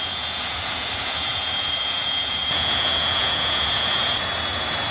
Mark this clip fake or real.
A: fake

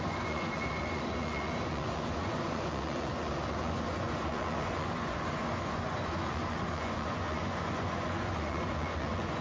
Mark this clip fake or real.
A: fake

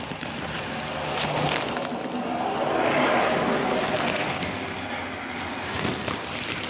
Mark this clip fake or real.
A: real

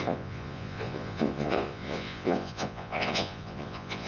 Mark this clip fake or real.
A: fake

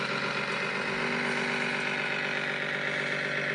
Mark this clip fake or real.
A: real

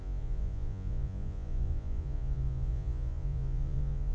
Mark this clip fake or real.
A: fake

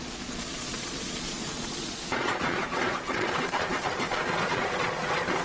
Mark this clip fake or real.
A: fake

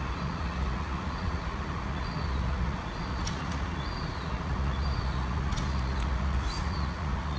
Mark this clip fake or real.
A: fake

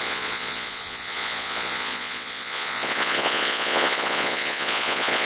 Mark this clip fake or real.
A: fake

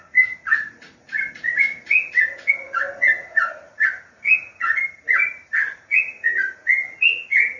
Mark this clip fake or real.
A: fake